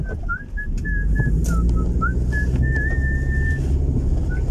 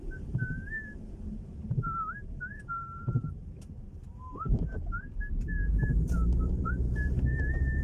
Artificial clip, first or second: second